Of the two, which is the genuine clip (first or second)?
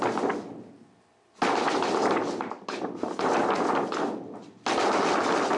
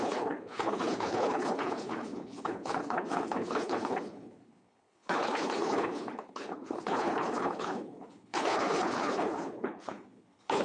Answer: first